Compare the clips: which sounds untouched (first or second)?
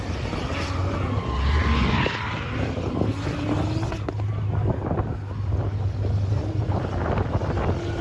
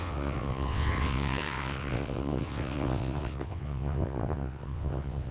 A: first